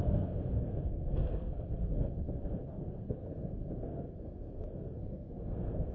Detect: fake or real fake